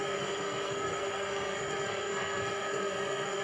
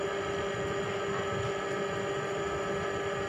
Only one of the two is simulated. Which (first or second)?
first